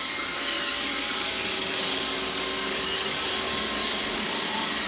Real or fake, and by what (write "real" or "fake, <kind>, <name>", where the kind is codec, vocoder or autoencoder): fake, codec, DAC